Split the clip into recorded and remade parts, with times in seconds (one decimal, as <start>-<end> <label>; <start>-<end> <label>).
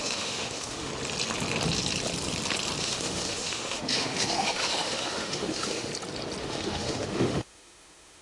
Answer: 0.0-0.9 remade; 0.9-2.8 recorded; 2.8-5.9 remade; 5.9-6.4 recorded; 6.4-8.2 remade